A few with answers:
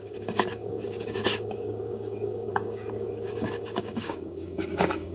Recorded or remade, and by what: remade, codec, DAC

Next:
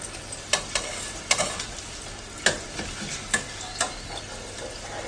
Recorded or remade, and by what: recorded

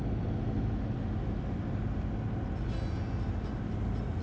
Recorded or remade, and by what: recorded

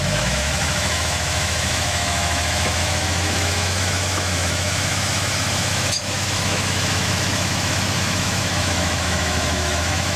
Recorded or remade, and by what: remade, autoencoder, DAC-VAE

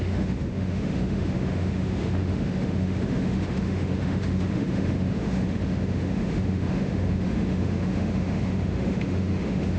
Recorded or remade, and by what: remade, autoencoder, DAC-VAE